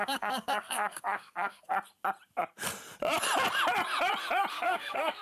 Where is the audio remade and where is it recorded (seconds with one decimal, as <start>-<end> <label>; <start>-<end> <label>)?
0.0-1.7 remade; 1.7-4.5 recorded; 4.5-5.2 remade